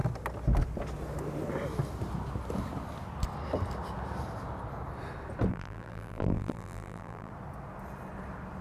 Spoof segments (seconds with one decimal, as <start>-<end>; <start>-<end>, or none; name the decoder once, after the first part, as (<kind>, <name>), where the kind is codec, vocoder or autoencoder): 5.5-7.3 (vocoder, BigVGAN v2)